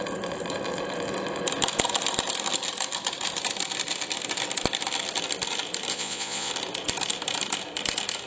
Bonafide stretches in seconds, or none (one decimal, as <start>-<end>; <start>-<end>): 0.0-5.9; 6.5-8.3